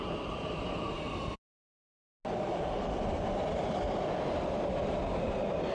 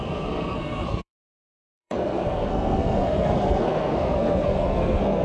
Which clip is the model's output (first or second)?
second